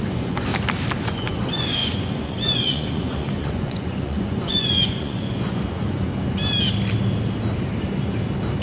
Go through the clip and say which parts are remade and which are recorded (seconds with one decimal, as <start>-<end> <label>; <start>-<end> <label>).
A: 0.0-0.5 remade; 0.5-1.1 recorded; 1.1-6.1 remade; 6.1-8.6 recorded